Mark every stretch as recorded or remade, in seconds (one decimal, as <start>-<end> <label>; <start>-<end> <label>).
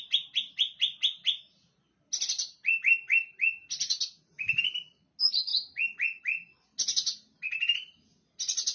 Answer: 0.0-8.7 recorded